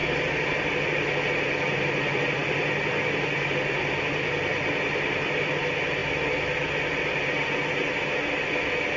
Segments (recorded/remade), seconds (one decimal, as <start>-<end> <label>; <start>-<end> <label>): 0.0-9.0 recorded